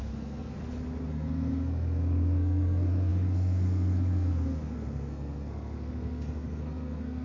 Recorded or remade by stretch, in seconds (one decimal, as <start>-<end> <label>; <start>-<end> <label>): 0.0-0.6 remade; 0.6-1.1 recorded; 1.1-7.2 remade